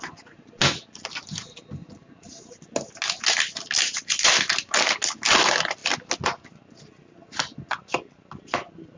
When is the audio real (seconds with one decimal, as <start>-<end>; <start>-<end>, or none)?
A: 0.0-9.0